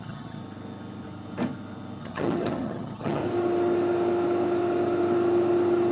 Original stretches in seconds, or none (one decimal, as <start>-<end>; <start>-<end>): 0.4-2.0; 3.2-5.9